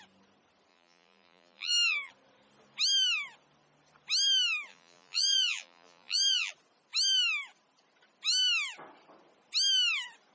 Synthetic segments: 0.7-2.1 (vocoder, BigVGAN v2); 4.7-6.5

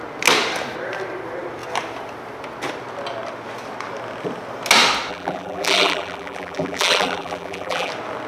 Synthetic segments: 5.1-7.9 (vocoder, BigVGAN v2)

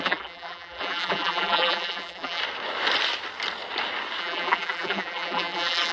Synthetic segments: 0.0-2.4 (vocoder, BigVGAN v2); 4.2-5.9

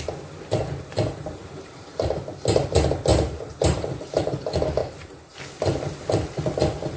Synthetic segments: 1.4-2.1 (vocoder, BigVGAN v2); 3.1-4.0; 4.8-5.4

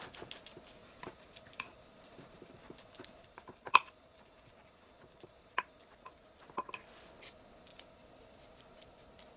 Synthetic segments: 0.8-6.1 (vocoder, BigVGAN v2); 7.7-8.4

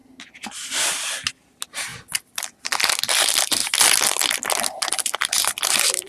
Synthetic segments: 1.9-2.7 (vocoder, BigVGAN v2)

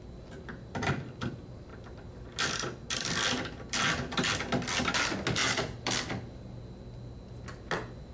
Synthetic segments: 5.4-6.4 (vocoder, BigVGAN v2)